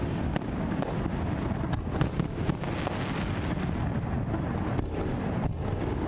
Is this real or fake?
real